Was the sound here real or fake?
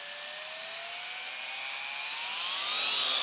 real